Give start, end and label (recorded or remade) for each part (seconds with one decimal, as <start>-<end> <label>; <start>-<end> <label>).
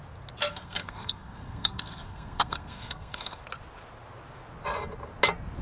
0.0-0.5 recorded; 0.5-3.4 remade; 3.4-5.6 recorded